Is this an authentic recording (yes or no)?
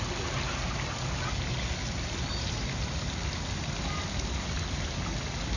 yes